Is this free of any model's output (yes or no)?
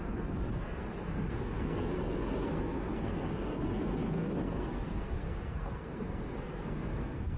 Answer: no